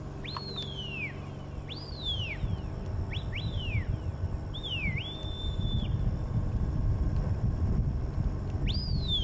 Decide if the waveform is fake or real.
real